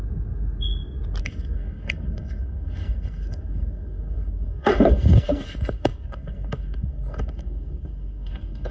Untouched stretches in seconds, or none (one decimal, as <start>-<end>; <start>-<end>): 0.0-1.2